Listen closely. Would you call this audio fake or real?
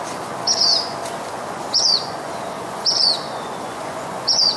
fake